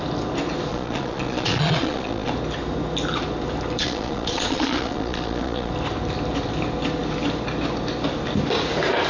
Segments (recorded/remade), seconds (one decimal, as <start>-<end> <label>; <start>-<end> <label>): 0.0-0.7 recorded; 0.7-2.3 remade; 2.3-3.8 recorded; 3.8-5.7 remade; 5.7-9.1 recorded